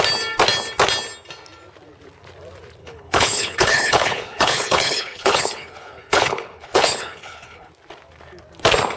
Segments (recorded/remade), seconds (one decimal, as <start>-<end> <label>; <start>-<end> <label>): 0.0-2.8 recorded; 2.8-7.7 remade; 7.7-9.0 recorded